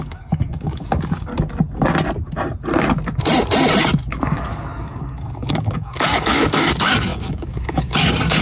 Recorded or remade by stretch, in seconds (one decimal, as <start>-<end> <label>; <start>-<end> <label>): 0.0-1.3 remade; 1.3-4.1 recorded; 4.1-8.4 remade